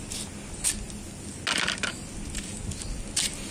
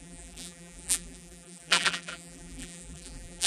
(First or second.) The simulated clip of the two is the second